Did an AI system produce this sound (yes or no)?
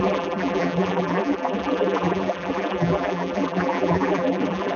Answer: yes